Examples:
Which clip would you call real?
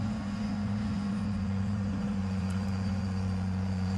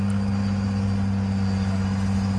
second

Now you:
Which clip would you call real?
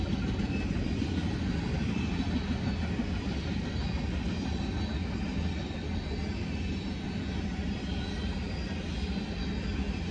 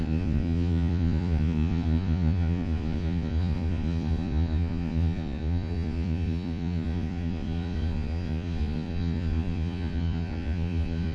first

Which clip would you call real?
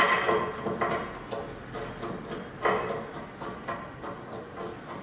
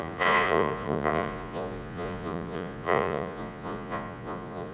first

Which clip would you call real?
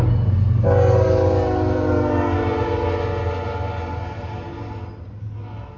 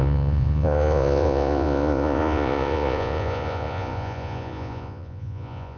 first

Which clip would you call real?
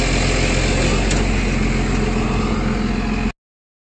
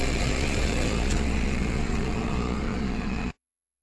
first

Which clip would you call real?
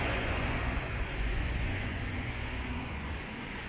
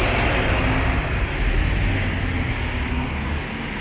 second